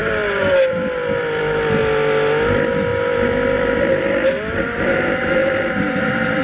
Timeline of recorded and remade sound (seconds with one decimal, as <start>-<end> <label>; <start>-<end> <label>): 0.0-1.8 remade; 1.8-2.5 recorded; 2.5-5.4 remade; 5.4-6.0 recorded; 6.0-6.4 remade